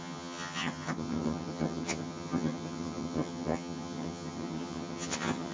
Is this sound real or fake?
fake